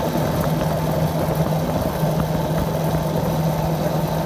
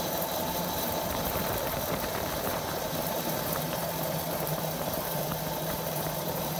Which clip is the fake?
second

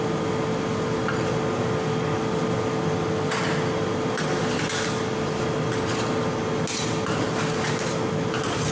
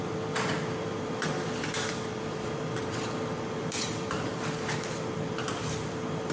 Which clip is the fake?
second